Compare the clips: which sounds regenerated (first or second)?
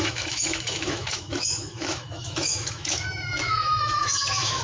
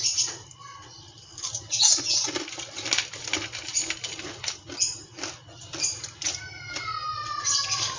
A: first